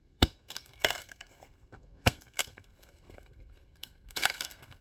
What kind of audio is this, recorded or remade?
remade